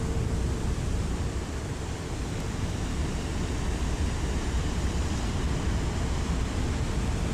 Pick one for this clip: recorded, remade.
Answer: remade